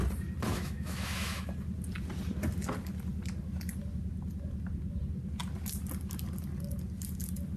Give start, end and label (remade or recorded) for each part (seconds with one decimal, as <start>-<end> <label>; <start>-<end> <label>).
0.0-0.5 recorded; 0.5-1.5 remade; 1.5-7.6 recorded